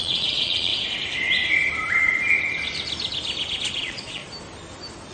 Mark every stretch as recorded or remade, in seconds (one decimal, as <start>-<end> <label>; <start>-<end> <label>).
0.0-0.7 remade; 0.7-3.8 recorded; 3.8-4.2 remade; 4.2-5.1 recorded